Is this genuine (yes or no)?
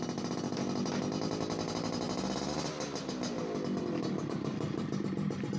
yes